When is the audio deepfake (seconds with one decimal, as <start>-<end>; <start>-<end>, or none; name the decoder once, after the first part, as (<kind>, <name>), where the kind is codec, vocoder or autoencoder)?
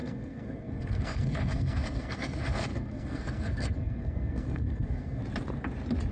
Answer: 0.0-5.2 (codec, SNAC)